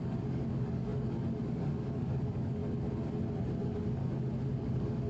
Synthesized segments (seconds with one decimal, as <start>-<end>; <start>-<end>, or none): 0.0-2.6; 3.6-4.0; 4.6-5.1